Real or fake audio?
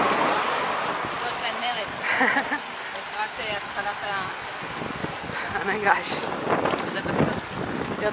real